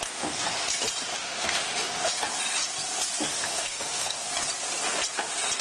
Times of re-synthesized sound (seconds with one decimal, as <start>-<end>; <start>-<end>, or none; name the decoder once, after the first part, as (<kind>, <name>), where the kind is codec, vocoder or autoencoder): 1.1-2.1 (autoencoder, DAC-VAE); 3.3-4.3